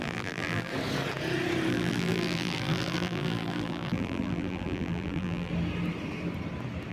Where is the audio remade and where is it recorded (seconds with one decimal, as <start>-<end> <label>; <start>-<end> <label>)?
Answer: 0.0-0.7 remade; 0.7-1.7 recorded; 1.7-5.5 remade; 5.5-6.9 recorded